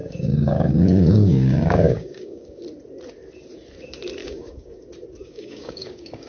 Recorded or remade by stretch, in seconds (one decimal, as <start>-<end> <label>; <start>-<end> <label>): 0.0-2.6 remade; 2.6-4.2 recorded; 4.2-4.8 remade; 4.8-5.2 recorded; 5.2-6.3 remade